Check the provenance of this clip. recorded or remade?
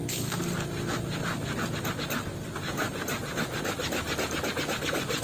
recorded